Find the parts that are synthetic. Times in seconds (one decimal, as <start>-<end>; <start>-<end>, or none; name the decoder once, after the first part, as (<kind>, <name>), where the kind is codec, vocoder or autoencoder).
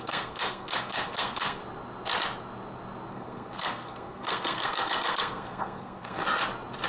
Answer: 0.0-1.6 (codec, SNAC); 3.1-6.2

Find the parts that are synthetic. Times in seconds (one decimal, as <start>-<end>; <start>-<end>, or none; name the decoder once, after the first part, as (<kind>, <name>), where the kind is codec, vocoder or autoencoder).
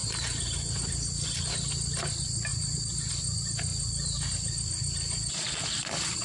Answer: 0.0-1.5 (vocoder, BigVGAN v2); 2.5-3.1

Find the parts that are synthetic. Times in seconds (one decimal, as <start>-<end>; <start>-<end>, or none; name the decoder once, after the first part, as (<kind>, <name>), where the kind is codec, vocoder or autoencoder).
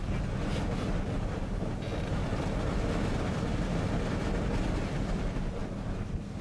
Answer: none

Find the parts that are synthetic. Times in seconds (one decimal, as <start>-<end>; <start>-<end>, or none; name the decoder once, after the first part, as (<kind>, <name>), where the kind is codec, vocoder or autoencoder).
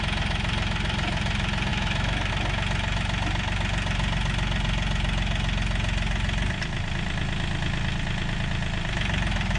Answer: 1.7-2.3 (autoencoder, DAC-VAE)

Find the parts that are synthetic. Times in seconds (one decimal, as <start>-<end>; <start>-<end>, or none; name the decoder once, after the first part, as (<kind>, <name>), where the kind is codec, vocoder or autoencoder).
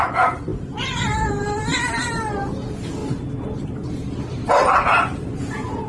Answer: 0.0-3.0 (vocoder, BigVGAN v2); 4.3-5.9